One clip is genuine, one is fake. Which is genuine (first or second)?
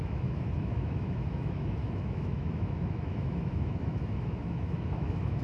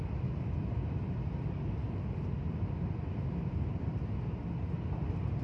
second